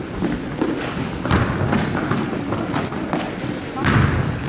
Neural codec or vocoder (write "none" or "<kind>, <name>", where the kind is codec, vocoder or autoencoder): none